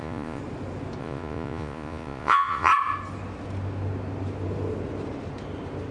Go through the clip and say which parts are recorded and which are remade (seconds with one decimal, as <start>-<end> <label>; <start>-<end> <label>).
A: 0.0-0.4 remade; 0.4-1.0 recorded; 1.0-2.7 remade; 2.7-5.9 recorded